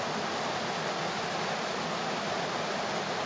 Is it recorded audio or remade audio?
recorded